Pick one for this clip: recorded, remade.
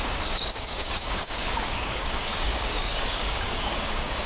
remade